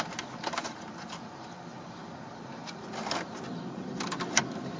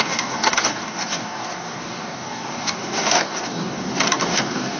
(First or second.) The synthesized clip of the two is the second